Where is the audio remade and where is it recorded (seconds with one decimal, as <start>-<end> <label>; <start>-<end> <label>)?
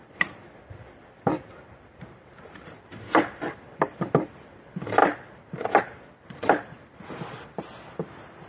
0.0-5.0 remade; 5.0-5.8 recorded; 5.8-8.5 remade